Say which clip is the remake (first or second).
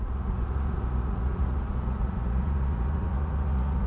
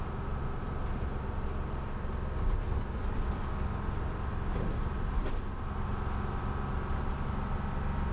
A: first